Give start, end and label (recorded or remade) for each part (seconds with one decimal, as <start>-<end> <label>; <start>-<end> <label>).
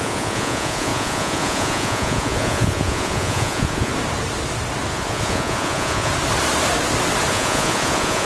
0.0-3.9 remade; 3.9-4.9 recorded; 4.9-6.1 remade; 6.1-7.3 recorded; 7.3-8.2 remade